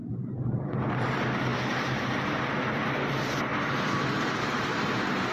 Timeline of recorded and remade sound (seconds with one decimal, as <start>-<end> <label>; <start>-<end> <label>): 0.0-0.7 remade; 0.7-3.5 recorded; 3.5-5.3 remade